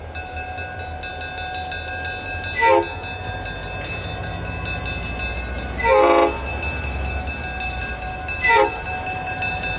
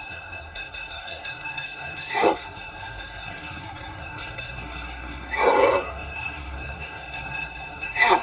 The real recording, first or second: first